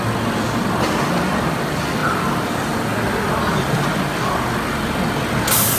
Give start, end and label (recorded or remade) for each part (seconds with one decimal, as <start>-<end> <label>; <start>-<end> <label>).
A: 0.0-5.8 recorded